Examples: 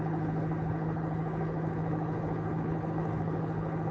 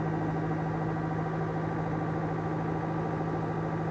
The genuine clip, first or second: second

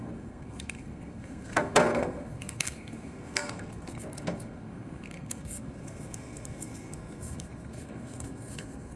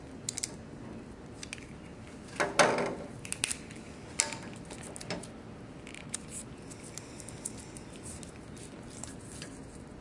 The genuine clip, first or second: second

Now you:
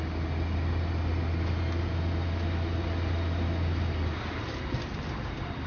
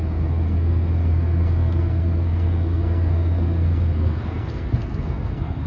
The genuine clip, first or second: first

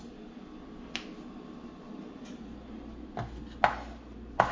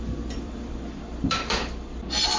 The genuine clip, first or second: first